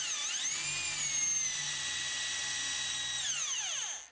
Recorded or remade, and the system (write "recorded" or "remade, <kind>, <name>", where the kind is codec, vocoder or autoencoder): recorded